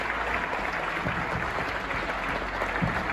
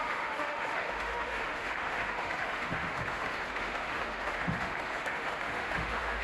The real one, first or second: first